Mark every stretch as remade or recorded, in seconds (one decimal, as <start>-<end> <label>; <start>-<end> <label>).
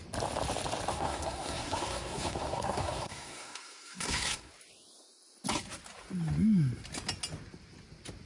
0.0-0.9 recorded; 0.9-4.5 remade; 4.5-8.3 recorded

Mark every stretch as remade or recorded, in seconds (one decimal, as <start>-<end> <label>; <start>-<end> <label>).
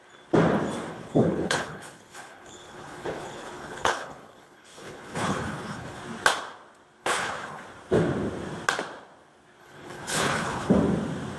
0.0-0.9 recorded; 0.9-6.0 remade; 6.0-7.0 recorded; 7.0-7.6 remade; 7.6-9.6 recorded; 9.6-10.7 remade; 10.7-11.4 recorded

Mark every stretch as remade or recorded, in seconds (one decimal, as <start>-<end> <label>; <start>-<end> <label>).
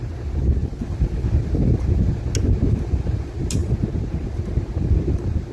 0.0-5.5 recorded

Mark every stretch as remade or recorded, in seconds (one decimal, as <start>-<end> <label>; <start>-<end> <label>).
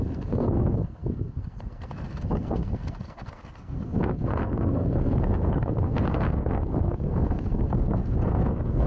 0.0-8.9 remade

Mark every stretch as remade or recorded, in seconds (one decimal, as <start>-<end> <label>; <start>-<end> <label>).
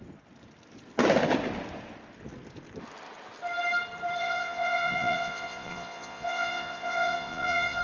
0.0-4.2 recorded; 4.2-7.8 remade